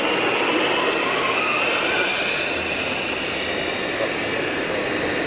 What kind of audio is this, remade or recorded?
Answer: recorded